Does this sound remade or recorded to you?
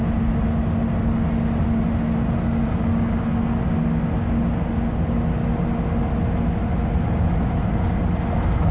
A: recorded